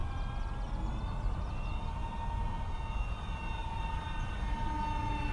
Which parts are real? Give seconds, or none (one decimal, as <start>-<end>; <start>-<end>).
0.0-3.6; 4.4-5.3